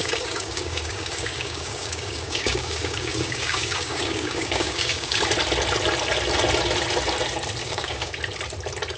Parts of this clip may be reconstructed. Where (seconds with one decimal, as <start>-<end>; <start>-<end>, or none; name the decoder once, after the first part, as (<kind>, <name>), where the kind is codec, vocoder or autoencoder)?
0.0-5.2 (codec, DAC); 7.6-8.2